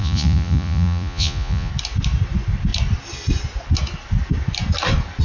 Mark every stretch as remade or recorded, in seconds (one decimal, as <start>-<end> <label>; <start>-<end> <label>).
0.0-1.7 remade; 1.7-5.2 recorded